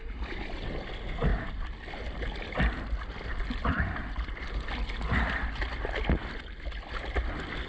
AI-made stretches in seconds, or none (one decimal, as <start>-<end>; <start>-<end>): none